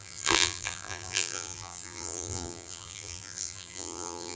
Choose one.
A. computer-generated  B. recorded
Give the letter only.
A